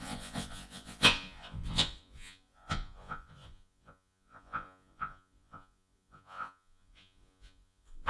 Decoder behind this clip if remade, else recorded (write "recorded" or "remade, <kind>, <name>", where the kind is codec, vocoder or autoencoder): remade, vocoder, Vocos